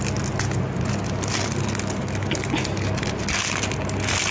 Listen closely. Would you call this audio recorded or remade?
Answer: recorded